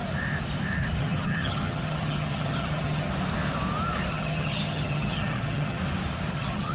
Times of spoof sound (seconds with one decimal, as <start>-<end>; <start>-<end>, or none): 1.0-3.1; 4.1-5.8; 6.3-6.7